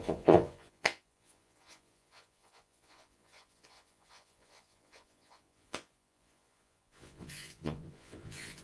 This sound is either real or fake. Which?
fake